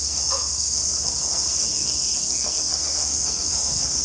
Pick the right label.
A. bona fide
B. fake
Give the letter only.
B